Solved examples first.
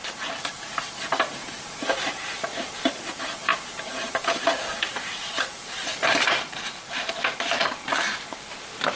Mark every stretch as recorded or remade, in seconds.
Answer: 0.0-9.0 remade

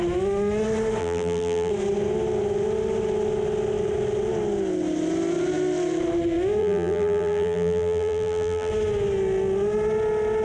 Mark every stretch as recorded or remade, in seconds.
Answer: 0.0-1.0 recorded; 1.0-1.7 remade; 1.7-6.6 recorded; 6.6-8.7 remade; 8.7-10.4 recorded

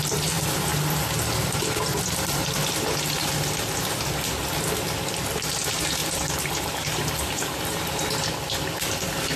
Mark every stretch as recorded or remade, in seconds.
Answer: 0.0-6.0 recorded; 6.0-8.0 remade; 8.0-9.4 recorded